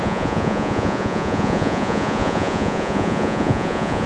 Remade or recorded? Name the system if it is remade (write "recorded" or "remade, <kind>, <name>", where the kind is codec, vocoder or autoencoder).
remade, vocoder, Vocos